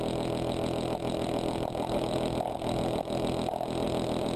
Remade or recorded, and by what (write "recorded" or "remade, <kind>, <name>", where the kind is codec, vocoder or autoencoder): recorded